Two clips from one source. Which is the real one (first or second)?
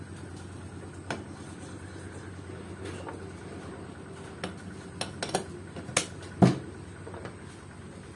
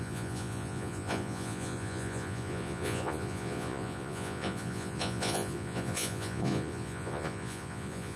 first